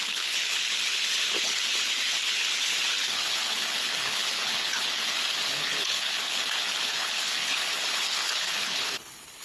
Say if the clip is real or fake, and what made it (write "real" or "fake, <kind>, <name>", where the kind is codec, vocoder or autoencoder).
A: fake, codec, HILCodec